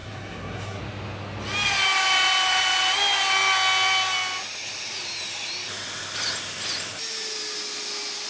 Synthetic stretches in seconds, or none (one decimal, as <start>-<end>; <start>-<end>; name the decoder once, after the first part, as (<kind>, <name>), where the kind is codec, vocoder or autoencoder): 0.0-0.8 (codec, SNAC)